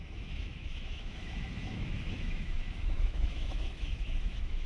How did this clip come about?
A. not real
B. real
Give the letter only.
A